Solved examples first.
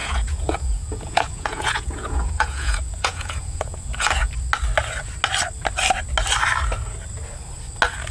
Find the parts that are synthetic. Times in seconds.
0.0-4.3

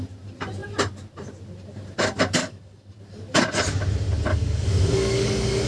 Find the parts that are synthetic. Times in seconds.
2.4-3.0; 4.3-5.7

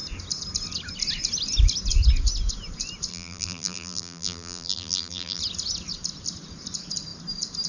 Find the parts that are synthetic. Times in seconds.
3.1-5.4

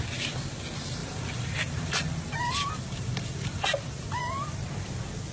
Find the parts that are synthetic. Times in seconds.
1.0-4.2

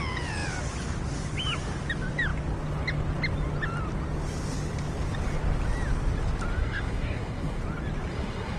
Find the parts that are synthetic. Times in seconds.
6.6-7.6; 8.1-8.6

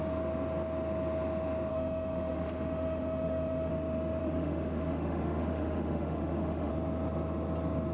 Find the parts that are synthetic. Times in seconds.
1.7-3.7; 4.2-6.7